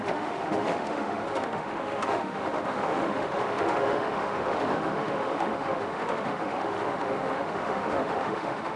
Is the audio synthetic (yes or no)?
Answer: yes